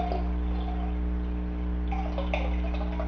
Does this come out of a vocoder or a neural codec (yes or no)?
no